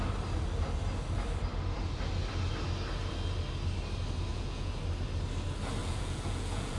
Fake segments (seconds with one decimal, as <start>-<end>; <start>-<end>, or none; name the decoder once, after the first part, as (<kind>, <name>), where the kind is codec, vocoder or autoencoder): 4.3-4.8 (vocoder, Vocos); 5.8-6.8